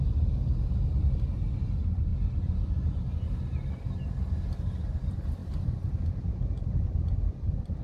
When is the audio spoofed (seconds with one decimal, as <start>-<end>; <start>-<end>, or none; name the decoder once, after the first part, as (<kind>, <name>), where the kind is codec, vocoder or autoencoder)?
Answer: none